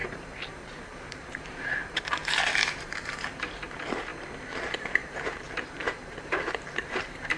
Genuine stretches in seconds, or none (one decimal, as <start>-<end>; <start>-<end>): 4.1-4.6